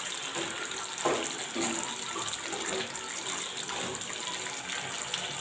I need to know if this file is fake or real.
real